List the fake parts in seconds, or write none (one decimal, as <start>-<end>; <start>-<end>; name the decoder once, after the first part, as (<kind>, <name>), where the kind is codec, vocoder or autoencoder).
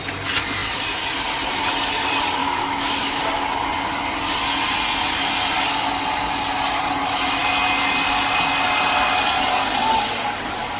2.4-3.2 (autoencoder, DAC-VAE)